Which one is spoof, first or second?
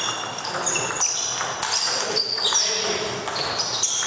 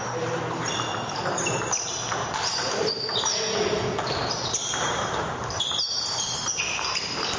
second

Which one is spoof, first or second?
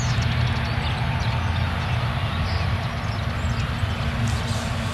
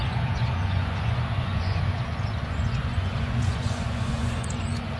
second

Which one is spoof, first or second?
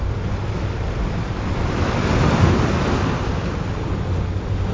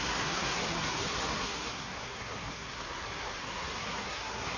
second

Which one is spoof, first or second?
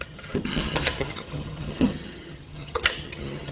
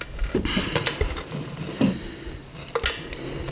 first